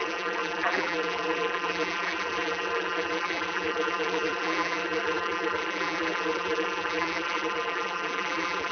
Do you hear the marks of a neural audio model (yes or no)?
yes